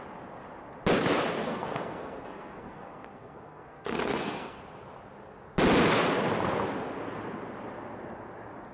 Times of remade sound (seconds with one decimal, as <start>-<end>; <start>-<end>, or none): 1.4-4.6